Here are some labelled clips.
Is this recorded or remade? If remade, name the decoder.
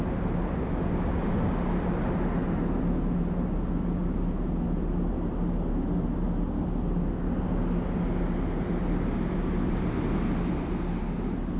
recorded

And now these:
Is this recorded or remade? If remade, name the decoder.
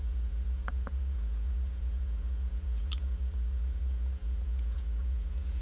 remade, vocoder, Vocos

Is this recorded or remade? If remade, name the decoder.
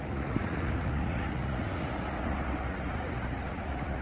remade, vocoder, Vocos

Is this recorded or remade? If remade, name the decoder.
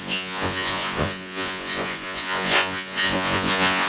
remade, vocoder, Vocos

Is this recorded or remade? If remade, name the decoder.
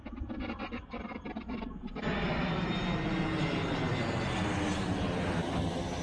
recorded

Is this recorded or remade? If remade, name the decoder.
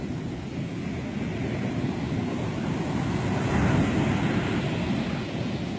recorded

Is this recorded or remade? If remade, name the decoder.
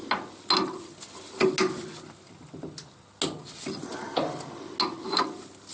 recorded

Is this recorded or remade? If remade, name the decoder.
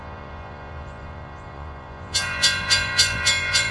remade, vocoder, Vocos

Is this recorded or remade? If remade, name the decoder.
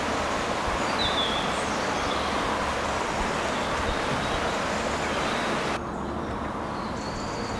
recorded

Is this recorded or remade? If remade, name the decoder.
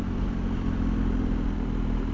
recorded